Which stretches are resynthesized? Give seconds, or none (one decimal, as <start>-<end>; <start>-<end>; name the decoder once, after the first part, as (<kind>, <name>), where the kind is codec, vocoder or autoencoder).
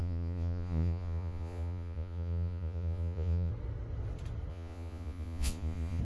0.0-3.5 (vocoder, Vocos); 4.5-6.0